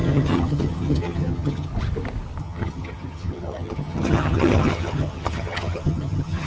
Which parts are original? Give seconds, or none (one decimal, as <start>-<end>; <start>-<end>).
1.7-2.4